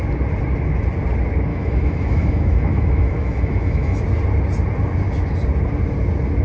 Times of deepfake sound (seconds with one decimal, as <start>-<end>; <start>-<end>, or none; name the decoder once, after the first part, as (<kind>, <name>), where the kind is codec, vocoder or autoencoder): 1.5-4.0 (autoencoder, DAC-VAE)